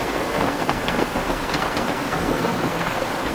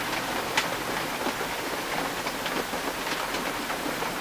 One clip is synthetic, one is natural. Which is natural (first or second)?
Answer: second